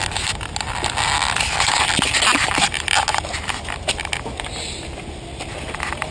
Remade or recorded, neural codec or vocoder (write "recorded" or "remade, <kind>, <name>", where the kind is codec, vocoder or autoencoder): recorded